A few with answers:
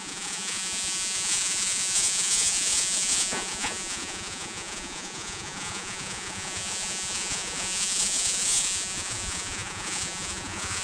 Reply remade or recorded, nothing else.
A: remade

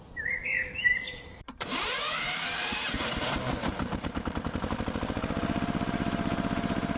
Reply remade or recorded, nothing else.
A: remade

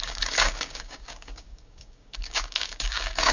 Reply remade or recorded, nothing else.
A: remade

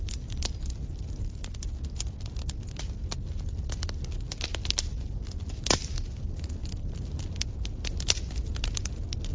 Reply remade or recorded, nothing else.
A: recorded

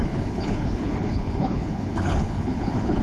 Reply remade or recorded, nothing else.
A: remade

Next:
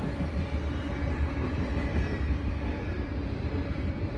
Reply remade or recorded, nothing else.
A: recorded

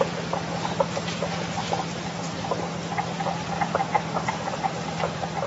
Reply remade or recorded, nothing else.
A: recorded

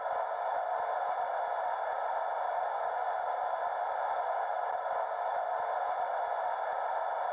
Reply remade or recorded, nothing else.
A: recorded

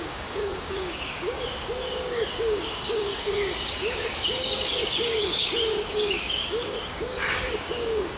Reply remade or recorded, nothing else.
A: remade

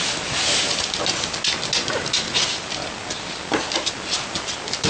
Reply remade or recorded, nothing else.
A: recorded